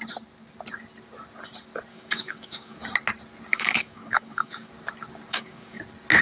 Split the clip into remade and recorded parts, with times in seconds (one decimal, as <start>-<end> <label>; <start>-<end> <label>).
0.0-1.9 recorded; 1.9-2.8 remade; 2.8-3.5 recorded; 3.5-4.7 remade; 4.7-5.3 recorded; 5.3-5.8 remade; 5.8-6.2 recorded